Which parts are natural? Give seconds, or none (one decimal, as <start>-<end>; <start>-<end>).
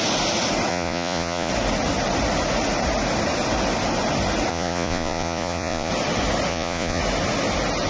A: 0.0-0.7; 1.5-4.5; 5.9-6.5; 7.0-7.9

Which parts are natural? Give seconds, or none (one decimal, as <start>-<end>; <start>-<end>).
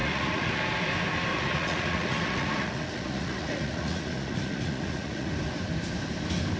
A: 0.6-1.3; 5.3-6.6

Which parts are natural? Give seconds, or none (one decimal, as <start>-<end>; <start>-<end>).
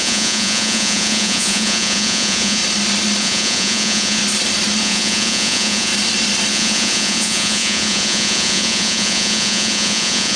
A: 2.6-3.2; 4.2-4.8; 5.9-6.5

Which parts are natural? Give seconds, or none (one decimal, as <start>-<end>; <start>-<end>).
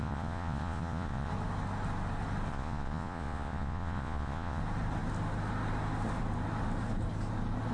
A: 1.3-2.5; 4.6-7.7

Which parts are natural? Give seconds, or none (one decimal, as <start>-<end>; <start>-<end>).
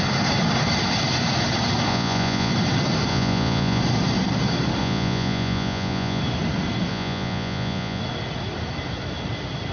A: 0.0-1.9; 2.5-3.1; 3.8-4.8; 6.2-6.9; 8.0-9.7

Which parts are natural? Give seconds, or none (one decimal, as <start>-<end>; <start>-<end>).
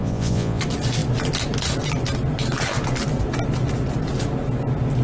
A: 0.6-5.0